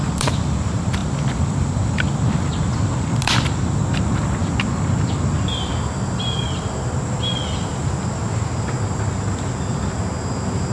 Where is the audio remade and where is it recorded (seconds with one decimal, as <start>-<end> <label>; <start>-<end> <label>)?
0.0-10.7 recorded